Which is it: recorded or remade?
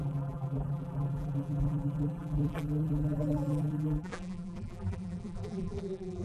remade